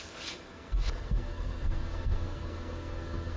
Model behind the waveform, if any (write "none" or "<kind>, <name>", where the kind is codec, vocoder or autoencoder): codec, SNAC